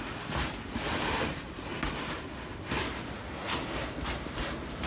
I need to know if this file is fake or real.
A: real